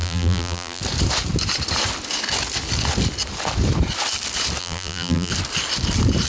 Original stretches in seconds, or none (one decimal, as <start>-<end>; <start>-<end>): 0.8-4.6; 5.3-6.3